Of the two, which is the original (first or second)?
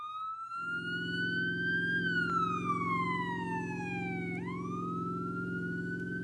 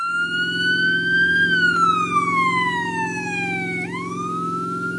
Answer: first